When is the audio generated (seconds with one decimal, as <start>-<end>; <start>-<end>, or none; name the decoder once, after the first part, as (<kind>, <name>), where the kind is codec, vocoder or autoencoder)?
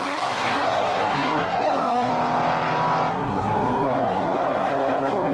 0.0-2.1 (codec, SNAC); 3.1-5.3